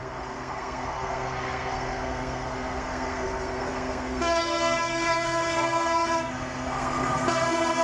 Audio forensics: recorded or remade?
remade